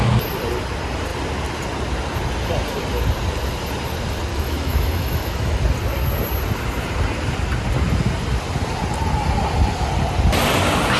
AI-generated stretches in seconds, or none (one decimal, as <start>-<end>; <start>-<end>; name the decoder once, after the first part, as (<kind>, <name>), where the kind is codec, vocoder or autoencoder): 4.3-5.6 (autoencoder, DAC-VAE)